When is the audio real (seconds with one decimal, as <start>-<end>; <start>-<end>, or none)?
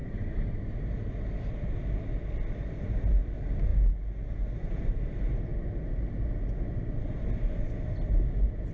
0.6-3.7; 5.0-8.7